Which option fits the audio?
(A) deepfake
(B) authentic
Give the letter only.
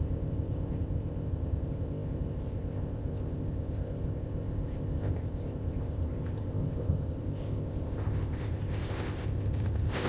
A